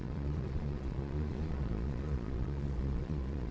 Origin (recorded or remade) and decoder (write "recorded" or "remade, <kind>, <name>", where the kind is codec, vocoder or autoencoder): remade, vocoder, Vocos